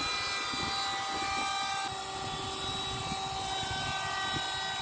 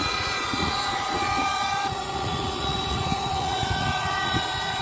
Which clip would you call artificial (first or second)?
second